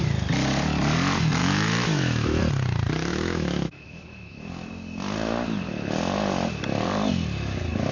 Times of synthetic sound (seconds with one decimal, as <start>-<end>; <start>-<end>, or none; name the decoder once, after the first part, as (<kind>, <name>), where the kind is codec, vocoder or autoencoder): 1.4-2.4 (autoencoder, DAC-VAE); 3.1-4.5